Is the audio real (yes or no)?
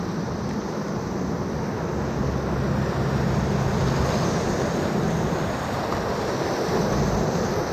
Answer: yes